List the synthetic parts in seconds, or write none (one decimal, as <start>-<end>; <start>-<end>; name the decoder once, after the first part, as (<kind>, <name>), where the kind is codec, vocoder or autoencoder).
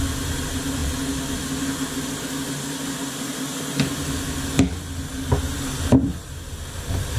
none